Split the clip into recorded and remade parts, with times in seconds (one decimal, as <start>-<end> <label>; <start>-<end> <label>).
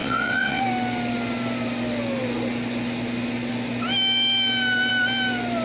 0.0-0.6 remade; 0.6-5.6 recorded